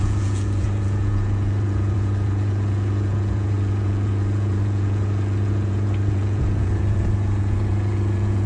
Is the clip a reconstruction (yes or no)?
yes